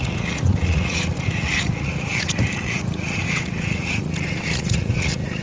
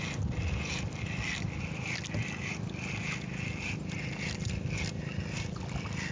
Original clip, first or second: second